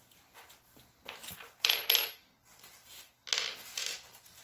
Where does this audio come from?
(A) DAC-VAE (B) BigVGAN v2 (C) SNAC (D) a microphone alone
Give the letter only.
D